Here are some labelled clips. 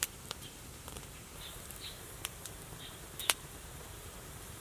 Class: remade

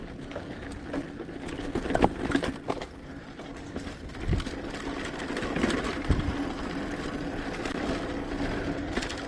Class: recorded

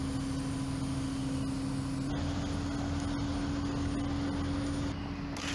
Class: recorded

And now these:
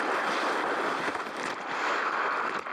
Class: recorded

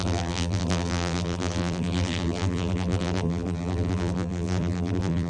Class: remade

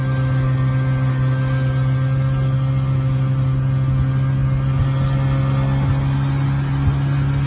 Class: recorded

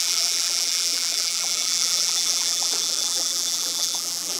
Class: remade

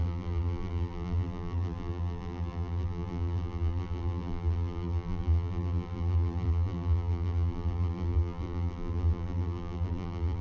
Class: remade